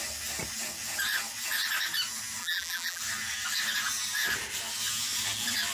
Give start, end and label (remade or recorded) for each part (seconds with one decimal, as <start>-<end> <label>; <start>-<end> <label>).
0.0-2.4 recorded; 2.4-3.0 remade; 3.0-5.7 recorded